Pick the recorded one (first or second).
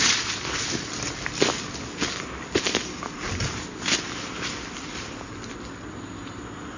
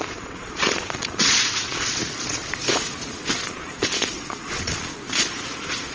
first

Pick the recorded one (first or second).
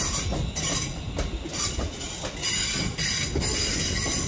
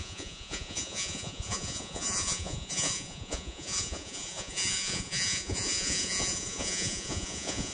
first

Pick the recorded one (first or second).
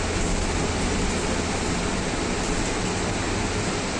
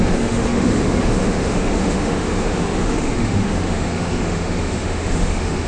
first